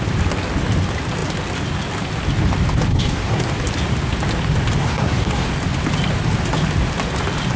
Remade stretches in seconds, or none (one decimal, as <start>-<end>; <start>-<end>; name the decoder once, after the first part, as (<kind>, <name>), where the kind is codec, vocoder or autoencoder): 2.9-3.5 (codec, SNAC); 4.8-5.5